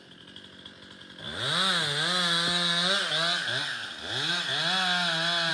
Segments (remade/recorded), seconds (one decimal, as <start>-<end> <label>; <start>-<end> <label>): 0.0-5.5 recorded